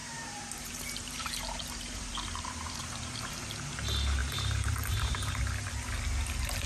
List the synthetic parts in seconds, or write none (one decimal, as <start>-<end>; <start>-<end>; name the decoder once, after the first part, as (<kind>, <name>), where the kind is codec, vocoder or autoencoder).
0.0-3.3 (vocoder, BigVGAN v2); 4.2-5.4